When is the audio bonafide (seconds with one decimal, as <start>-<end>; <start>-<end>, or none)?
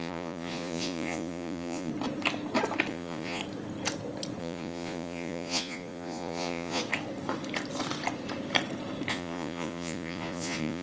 1.9-2.9; 3.4-4.4; 6.8-9.1